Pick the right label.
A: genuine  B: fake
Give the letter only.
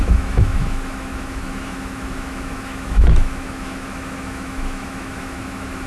B